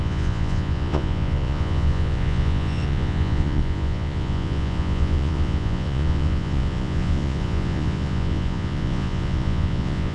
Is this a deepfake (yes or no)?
yes